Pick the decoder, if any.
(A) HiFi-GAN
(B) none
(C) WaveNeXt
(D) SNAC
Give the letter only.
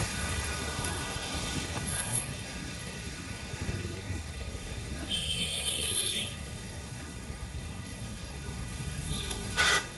D